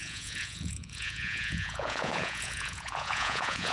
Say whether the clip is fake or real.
fake